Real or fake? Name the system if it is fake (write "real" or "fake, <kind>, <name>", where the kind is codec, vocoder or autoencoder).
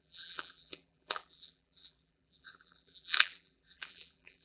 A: fake, vocoder, BigVGAN v2